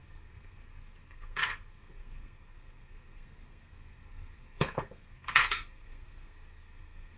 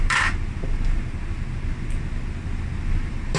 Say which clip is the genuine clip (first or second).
second